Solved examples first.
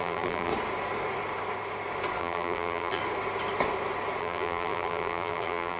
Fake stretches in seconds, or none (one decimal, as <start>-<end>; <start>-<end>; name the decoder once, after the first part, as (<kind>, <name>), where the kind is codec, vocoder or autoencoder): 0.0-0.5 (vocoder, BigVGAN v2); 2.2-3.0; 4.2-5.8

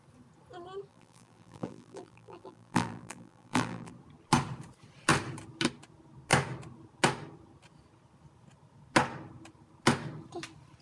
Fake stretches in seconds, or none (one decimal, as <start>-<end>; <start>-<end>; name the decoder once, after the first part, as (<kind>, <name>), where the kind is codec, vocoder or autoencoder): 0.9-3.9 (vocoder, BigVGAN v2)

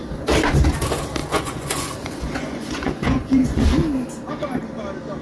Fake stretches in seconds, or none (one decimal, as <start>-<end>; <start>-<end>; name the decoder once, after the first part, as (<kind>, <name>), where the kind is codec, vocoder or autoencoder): 1.2-3.6 (vocoder, Vocos)

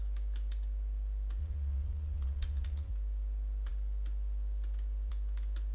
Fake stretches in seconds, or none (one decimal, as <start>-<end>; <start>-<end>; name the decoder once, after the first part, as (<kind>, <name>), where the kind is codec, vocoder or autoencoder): 1.4-2.9 (vocoder, Vocos)